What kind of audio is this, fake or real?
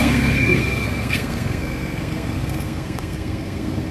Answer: fake